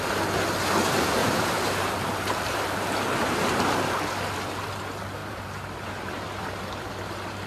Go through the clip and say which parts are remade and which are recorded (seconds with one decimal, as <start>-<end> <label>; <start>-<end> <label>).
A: 0.0-1.2 recorded; 1.2-3.8 remade; 3.8-5.2 recorded; 5.2-6.9 remade; 6.9-7.5 recorded